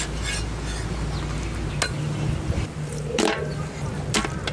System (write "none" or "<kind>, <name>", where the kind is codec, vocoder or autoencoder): none